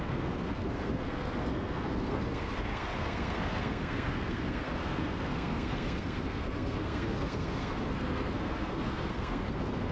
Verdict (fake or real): fake